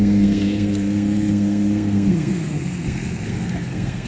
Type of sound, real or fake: fake